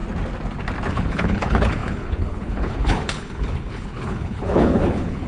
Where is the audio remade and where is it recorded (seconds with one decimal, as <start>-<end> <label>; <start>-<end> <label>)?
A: 0.0-0.9 recorded; 0.9-5.3 remade